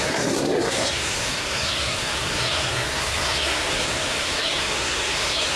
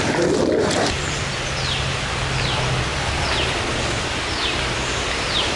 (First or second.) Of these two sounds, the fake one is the first